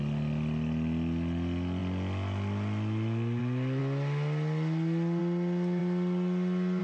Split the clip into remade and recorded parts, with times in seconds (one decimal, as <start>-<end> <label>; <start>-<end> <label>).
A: 0.0-6.8 recorded